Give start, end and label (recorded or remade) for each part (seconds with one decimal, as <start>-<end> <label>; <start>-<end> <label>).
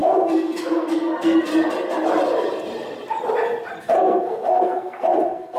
0.0-1.5 remade; 1.5-3.8 recorded; 3.8-5.6 remade